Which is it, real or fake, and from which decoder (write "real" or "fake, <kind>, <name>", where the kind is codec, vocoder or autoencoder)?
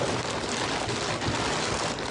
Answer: real